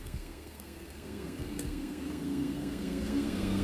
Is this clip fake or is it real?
fake